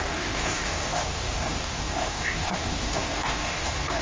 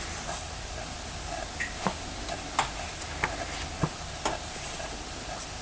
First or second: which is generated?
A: first